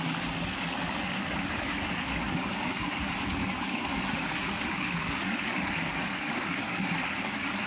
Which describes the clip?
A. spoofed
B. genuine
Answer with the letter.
A